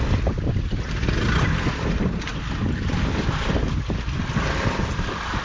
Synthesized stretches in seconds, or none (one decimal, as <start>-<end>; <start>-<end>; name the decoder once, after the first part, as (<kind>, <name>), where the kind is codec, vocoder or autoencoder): none